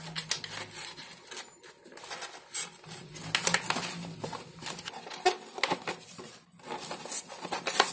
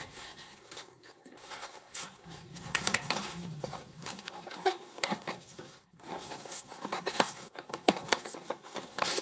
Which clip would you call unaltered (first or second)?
first